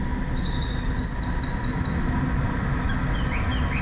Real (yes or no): yes